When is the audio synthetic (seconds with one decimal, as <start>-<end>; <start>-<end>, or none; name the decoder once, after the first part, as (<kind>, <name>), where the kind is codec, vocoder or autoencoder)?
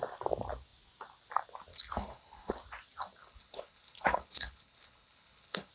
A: 1.7-2.5 (codec, HILCodec); 3.2-5.7